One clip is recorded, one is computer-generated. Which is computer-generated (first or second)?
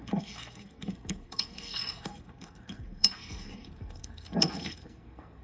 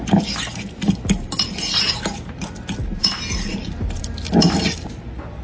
first